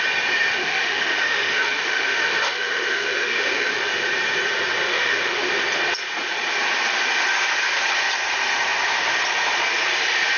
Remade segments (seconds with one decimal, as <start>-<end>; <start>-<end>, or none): 0.6-3.9; 4.9-5.5